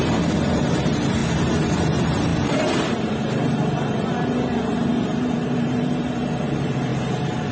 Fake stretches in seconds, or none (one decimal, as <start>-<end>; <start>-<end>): 0.0-1.2; 1.7-7.5